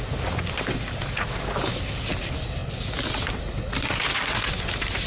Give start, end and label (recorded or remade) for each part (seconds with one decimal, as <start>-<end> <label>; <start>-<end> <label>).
0.0-5.1 recorded

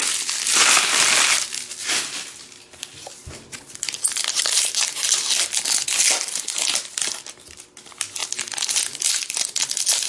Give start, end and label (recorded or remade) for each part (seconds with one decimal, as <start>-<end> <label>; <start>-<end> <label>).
0.0-10.1 recorded

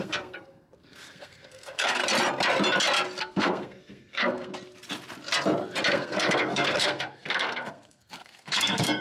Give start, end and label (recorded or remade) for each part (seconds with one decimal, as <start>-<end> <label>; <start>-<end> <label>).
0.0-2.0 remade; 2.0-3.2 recorded; 3.2-4.5 remade; 4.5-5.9 recorded; 5.9-9.0 remade

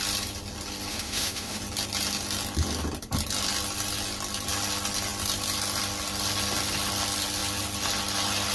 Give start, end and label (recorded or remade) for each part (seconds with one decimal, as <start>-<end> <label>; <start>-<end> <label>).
0.0-0.9 recorded; 0.9-1.6 remade; 1.6-8.5 recorded

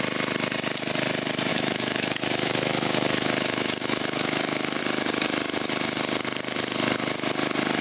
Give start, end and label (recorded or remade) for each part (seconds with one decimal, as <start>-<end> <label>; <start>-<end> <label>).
0.0-1.5 recorded; 1.5-4.8 remade; 4.8-7.8 recorded

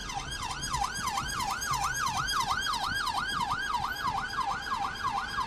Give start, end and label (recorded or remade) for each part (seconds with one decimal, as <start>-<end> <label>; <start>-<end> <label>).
0.0-5.5 recorded

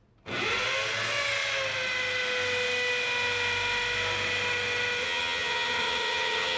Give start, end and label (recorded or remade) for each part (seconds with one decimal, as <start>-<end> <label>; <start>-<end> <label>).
0.0-5.0 recorded; 5.0-6.6 remade

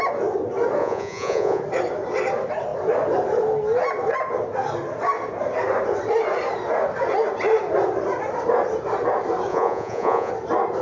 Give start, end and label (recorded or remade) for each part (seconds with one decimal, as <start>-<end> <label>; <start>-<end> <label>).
0.0-0.8 recorded; 0.8-1.6 remade; 1.6-9.5 recorded; 9.5-10.3 remade; 10.3-10.8 recorded